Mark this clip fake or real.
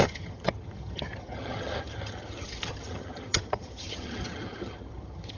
fake